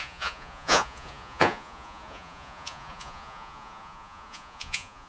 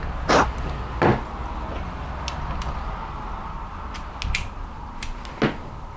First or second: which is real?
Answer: second